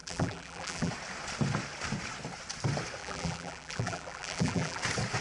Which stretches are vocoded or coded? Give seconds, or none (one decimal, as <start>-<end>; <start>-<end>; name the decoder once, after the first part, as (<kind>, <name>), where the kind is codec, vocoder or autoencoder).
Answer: 0.0-0.9 (vocoder, BigVGAN v2); 3.0-4.8